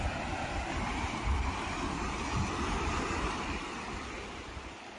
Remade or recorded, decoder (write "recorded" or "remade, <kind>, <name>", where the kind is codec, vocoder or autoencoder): recorded